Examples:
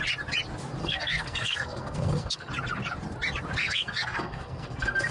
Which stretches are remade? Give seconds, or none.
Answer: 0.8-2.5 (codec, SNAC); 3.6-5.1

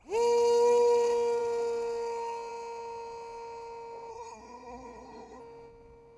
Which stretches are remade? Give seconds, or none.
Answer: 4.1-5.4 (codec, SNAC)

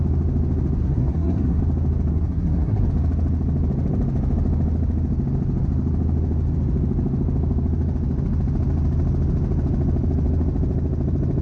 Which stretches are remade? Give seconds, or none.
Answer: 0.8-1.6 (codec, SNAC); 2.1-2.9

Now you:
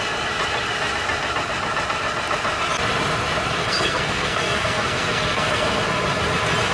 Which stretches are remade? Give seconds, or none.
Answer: 3.6-5.8 (codec, SNAC)